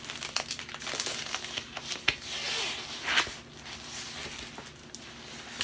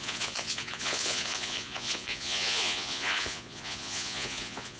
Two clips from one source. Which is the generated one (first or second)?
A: second